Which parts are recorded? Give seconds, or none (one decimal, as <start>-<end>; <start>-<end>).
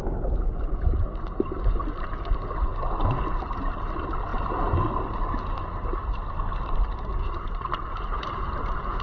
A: 0.0-9.0